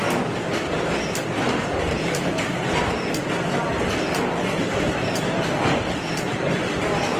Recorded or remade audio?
recorded